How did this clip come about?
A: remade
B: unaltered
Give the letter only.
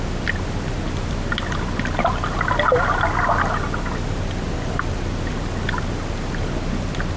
B